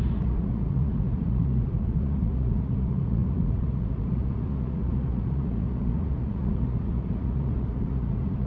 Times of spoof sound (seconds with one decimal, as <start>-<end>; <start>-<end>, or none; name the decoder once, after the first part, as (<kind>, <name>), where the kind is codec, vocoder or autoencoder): 0.0-8.5 (vocoder, Vocos)